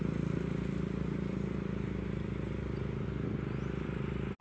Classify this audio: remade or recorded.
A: recorded